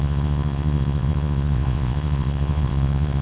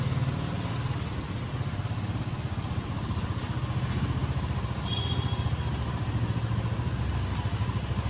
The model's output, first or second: first